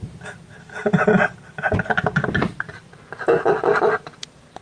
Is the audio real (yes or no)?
yes